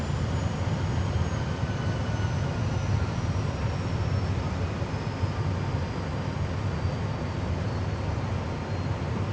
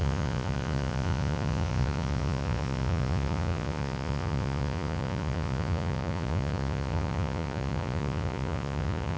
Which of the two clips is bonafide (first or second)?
first